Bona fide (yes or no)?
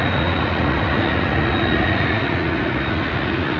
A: no